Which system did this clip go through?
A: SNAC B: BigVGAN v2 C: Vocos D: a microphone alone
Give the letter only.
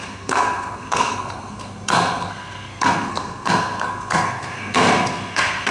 A